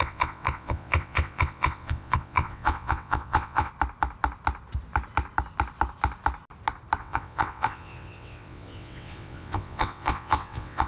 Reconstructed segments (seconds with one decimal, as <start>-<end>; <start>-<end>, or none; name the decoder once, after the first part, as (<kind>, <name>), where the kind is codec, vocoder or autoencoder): 0.0-3.7 (vocoder, WaveNeXt); 7.0-10.9